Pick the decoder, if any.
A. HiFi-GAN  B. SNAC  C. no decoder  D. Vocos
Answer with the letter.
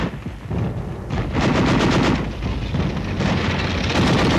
C